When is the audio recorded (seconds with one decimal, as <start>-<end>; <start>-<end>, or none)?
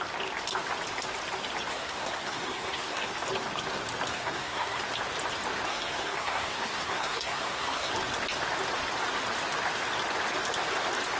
0.0-1.7; 3.1-4.1; 4.8-5.7; 7.9-11.2